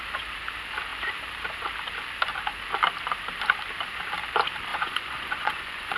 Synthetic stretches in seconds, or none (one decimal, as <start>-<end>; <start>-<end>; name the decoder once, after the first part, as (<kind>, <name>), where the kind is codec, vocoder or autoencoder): 4.7-6.0 (vocoder, Vocos)